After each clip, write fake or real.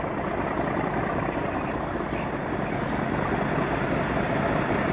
real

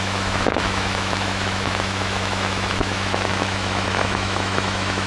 fake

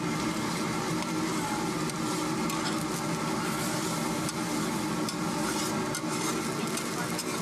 real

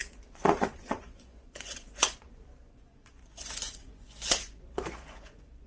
fake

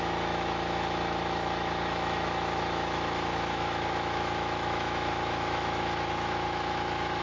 fake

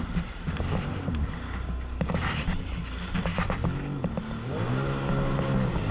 real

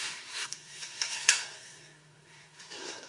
fake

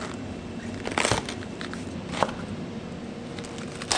real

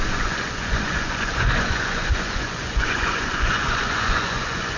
fake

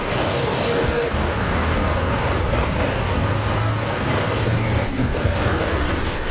fake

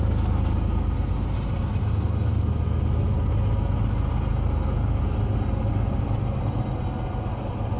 real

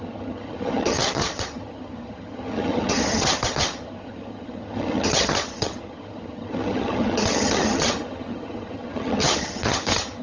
fake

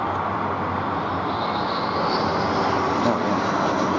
real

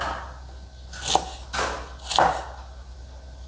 real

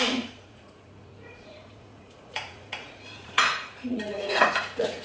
fake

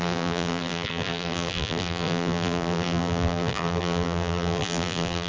fake